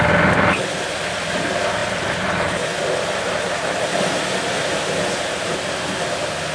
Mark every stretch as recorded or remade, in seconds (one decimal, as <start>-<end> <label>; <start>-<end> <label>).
0.0-6.5 recorded